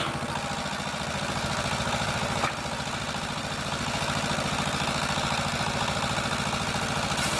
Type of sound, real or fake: real